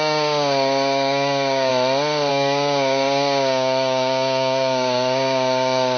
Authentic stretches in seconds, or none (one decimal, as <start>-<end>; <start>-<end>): 1.7-2.3